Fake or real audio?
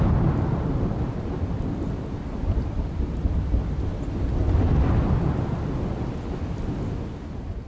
real